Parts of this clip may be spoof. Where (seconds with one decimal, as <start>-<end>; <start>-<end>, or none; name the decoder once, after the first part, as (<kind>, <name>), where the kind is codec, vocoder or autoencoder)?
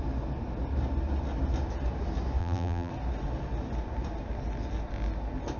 2.4-2.9 (vocoder, BigVGAN v2)